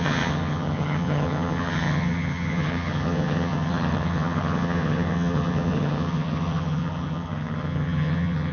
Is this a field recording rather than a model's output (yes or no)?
no